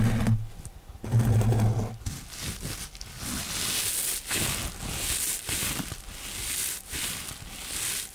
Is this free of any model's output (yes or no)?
yes